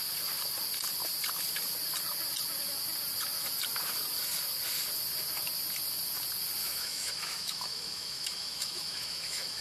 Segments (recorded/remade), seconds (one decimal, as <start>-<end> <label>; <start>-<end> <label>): 0.0-6.6 recorded; 6.6-9.6 remade